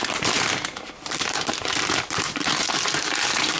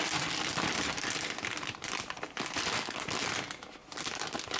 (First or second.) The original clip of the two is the second